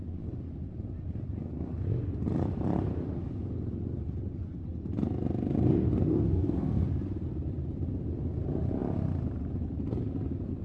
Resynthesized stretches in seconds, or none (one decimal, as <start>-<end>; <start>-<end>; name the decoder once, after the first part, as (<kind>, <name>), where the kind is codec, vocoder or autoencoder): 6.3-6.9 (codec, SNAC)